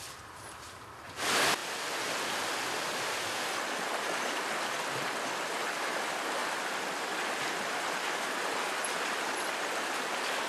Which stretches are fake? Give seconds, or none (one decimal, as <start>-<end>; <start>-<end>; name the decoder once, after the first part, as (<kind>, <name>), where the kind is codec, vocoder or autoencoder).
none